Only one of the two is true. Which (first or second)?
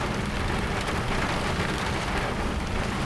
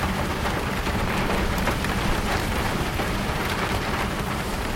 first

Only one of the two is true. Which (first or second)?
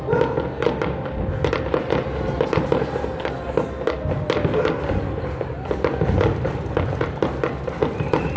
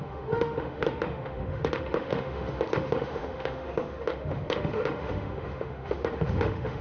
first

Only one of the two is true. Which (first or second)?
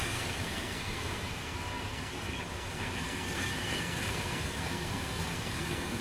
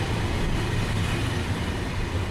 second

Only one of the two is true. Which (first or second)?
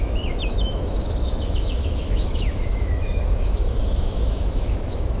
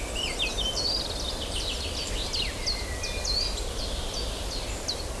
second